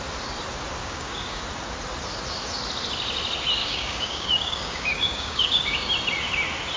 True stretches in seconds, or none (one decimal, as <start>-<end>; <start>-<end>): 0.0-0.8; 1.4-3.6; 5.9-6.8